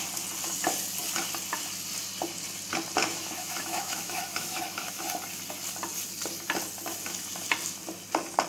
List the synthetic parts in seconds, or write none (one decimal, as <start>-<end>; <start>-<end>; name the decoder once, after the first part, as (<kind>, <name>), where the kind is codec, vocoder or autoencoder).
3.0-5.0 (autoencoder, DAC-VAE)